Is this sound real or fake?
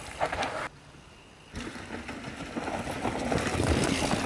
real